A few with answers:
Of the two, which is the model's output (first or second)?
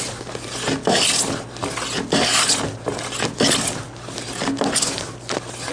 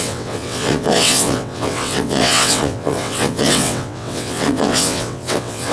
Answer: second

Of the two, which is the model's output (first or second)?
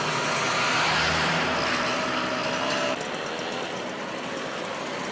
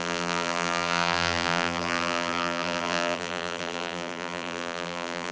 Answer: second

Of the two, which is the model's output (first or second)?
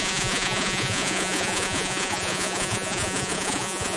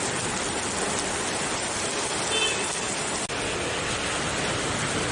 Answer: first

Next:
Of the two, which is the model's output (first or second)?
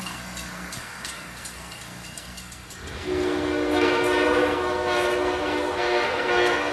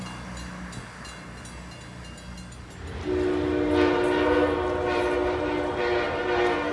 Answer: first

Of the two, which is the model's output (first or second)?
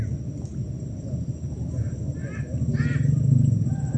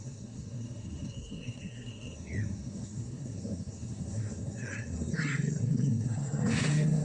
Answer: second